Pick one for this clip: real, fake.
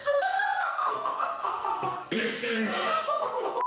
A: fake